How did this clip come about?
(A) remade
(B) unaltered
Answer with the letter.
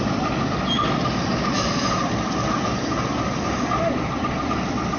B